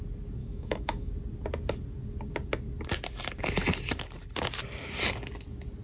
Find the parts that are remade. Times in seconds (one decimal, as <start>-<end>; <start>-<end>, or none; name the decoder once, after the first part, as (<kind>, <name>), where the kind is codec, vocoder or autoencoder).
0.4-1.1 (autoencoder, DAC-VAE)

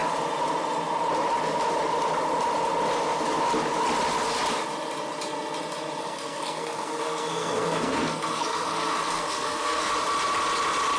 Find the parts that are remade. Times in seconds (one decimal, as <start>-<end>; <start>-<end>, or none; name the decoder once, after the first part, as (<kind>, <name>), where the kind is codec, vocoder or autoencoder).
6.0-9.9 (codec, SNAC)